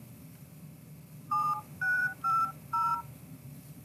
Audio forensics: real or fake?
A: fake